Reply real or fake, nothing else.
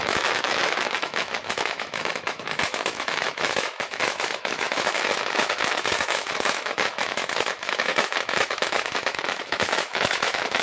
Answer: fake